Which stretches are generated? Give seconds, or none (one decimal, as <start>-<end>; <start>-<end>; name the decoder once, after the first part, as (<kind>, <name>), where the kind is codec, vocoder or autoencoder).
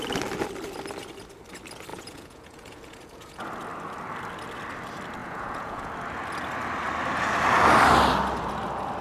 1.9-3.4 (vocoder, Vocos); 5.2-5.9